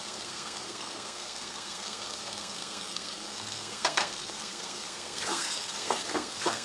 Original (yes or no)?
no